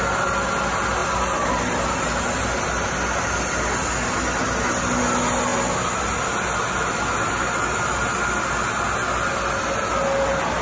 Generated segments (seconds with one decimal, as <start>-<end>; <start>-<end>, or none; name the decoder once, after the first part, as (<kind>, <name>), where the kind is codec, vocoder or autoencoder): none